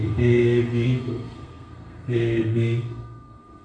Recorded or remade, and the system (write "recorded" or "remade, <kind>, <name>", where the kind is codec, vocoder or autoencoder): remade, codec, SNAC